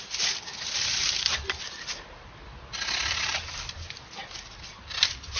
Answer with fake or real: real